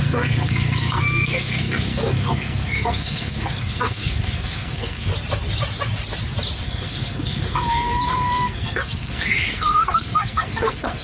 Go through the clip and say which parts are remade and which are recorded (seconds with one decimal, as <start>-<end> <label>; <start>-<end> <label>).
0.0-5.1 remade; 5.1-6.6 recorded; 6.6-11.0 remade